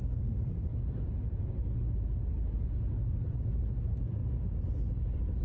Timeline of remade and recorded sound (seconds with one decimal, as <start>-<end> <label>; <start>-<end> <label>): 0.0-0.7 remade; 0.7-2.3 recorded; 2.3-4.2 remade; 4.2-5.4 recorded